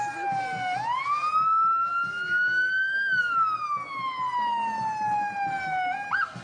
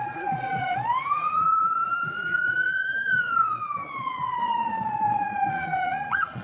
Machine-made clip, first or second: second